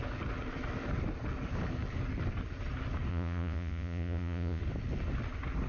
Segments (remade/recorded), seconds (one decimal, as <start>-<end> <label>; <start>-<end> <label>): 0.0-3.1 recorded; 3.1-4.6 remade; 4.6-5.7 recorded